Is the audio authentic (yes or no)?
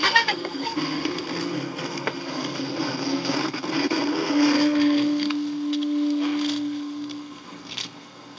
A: no